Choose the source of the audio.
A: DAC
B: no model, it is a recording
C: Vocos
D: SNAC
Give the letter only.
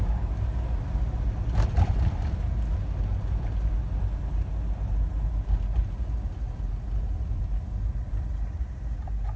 B